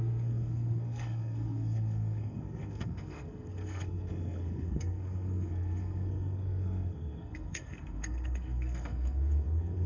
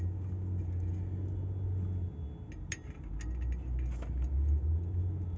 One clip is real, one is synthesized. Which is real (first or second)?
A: second